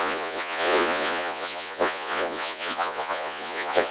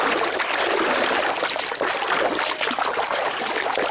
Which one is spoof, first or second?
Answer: first